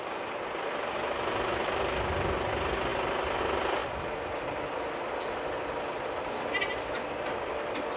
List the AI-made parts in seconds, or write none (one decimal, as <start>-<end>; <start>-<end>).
none

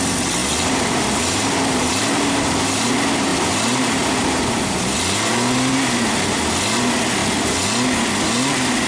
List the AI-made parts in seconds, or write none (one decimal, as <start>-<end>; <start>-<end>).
0.4-2.9; 3.3-5.0

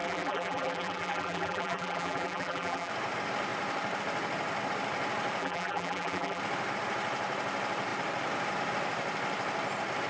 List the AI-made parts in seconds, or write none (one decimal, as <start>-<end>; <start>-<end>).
0.0-2.9; 5.4-6.4

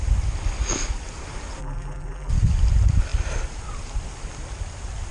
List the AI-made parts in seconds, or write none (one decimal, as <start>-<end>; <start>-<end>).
1.6-2.3

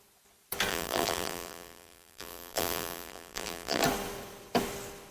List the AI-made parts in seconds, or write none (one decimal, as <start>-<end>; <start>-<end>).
0.7-3.8

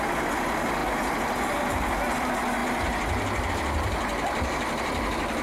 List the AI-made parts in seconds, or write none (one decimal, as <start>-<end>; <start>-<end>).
none